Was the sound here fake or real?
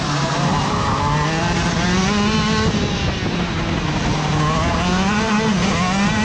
real